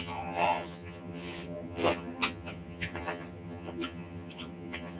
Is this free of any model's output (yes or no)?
no